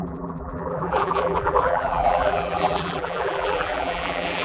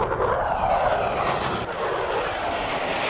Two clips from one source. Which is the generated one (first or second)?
first